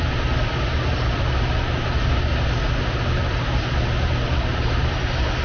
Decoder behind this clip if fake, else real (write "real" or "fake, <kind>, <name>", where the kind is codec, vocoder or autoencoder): real